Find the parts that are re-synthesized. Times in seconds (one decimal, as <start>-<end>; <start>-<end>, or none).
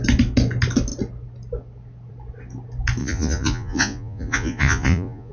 3.0-5.3